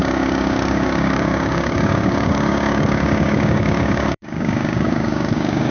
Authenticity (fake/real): fake